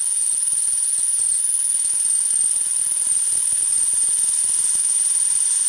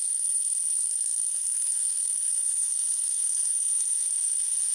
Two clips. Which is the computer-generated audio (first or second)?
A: second